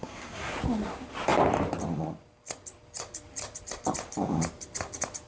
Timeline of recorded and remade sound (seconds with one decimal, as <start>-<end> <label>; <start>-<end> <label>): 0.0-0.5 remade; 0.5-5.3 recorded